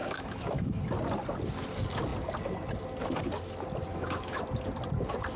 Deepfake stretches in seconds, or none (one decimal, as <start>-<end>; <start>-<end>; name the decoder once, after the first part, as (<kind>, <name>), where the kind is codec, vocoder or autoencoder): 0.0-0.8 (autoencoder, DAC-VAE); 3.9-4.4

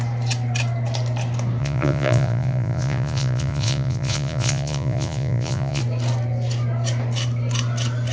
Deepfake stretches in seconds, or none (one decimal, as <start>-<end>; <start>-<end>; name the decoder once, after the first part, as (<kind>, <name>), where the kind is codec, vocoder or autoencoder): 1.6-5.8 (vocoder, Vocos)

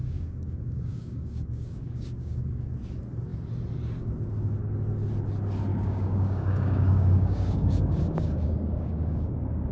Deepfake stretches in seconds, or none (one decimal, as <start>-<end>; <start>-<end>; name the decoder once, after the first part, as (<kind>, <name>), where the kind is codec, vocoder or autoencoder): 0.0-2.7 (codec, DAC); 5.7-9.7

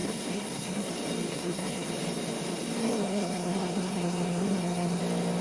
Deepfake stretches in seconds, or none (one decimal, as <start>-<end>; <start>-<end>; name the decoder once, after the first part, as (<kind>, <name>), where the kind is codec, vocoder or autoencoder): 0.0-0.9 (codec, SNAC); 1.3-1.9; 2.8-5.0

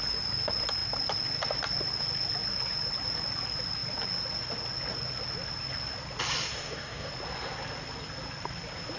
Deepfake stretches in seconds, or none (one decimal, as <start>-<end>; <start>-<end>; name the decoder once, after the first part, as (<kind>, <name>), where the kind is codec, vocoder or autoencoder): 6.5-7.1 (codec, DAC)

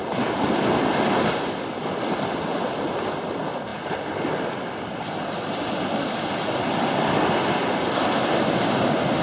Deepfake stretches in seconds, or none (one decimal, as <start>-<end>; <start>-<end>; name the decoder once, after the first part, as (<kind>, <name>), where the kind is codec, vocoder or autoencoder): none

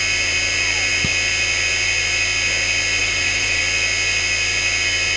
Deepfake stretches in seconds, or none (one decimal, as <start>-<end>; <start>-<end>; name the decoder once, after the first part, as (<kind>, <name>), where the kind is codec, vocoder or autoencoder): 3.0-3.6 (vocoder, BigVGAN v2)